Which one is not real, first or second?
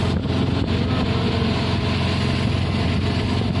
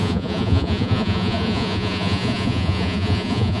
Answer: second